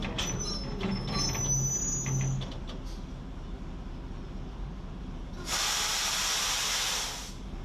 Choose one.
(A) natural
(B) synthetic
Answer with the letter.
A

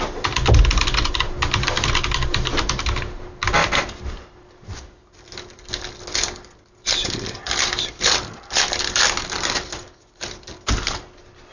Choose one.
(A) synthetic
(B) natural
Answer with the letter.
B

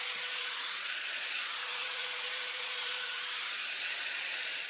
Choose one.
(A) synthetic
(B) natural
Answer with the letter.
A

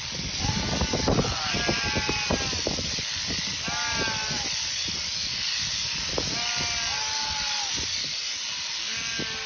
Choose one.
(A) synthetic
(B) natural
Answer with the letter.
B